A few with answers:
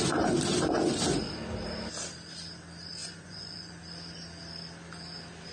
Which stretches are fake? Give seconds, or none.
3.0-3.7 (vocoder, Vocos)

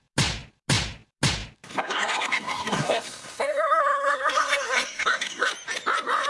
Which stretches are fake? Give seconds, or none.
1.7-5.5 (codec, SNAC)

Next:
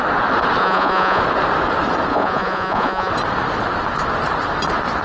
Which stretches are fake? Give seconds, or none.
0.6-1.2 (vocoder, Vocos); 2.1-3.1

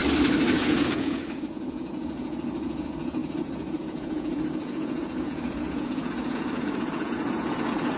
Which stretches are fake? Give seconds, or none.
0.6-8.0 (vocoder, Vocos)

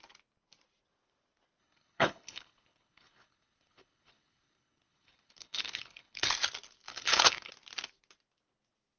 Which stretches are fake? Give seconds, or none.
1.6-6.3 (codec, HILCodec); 6.9-7.5

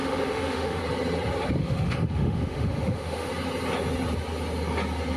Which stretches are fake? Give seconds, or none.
0.0-0.8 (autoencoder, DAC-VAE); 1.6-3.3

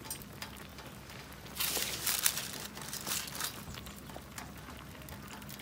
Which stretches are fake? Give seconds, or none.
none